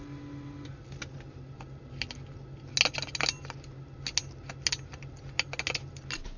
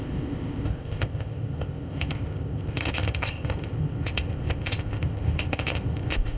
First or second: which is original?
first